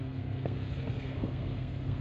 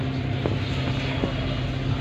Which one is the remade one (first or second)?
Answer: first